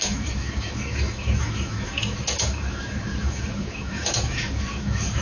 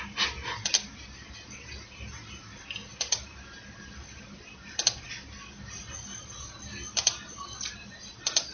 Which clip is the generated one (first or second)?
first